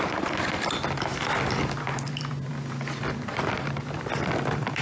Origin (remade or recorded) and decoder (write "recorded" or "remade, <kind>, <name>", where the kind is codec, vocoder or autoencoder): remade, vocoder, BigVGAN v2